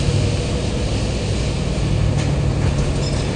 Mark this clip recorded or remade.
recorded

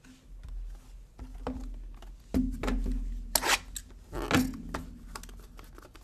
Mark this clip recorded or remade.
recorded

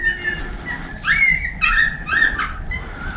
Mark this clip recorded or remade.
recorded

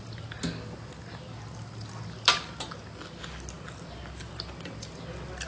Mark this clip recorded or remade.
recorded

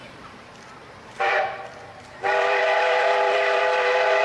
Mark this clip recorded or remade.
remade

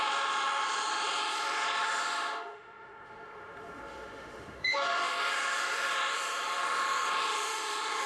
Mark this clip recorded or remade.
remade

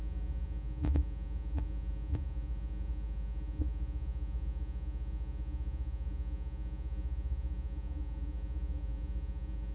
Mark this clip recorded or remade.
remade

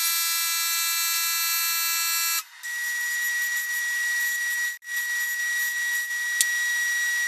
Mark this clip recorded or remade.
recorded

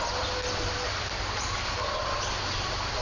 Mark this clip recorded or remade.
recorded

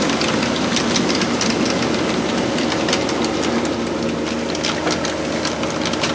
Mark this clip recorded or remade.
recorded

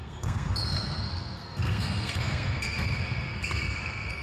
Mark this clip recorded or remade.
remade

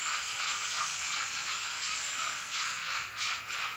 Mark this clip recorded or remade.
remade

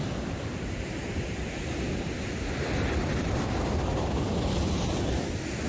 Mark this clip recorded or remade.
recorded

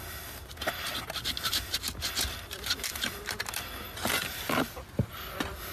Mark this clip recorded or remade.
recorded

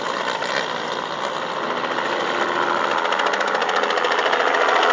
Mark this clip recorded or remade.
remade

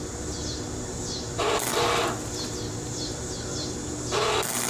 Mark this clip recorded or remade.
recorded